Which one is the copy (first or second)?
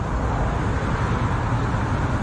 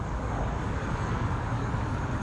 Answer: second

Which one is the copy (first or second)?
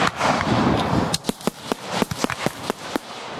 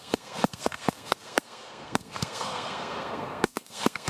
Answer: second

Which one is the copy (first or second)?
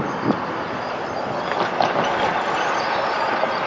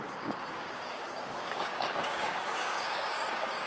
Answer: second